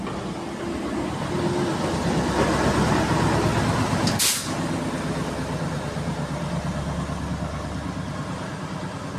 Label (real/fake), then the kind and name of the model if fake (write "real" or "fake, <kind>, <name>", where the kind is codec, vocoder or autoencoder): real